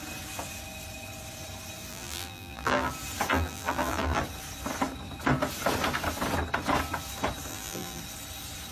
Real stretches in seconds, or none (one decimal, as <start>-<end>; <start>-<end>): 0.0-1.9; 2.9-3.3; 4.2-7.5; 8.0-8.7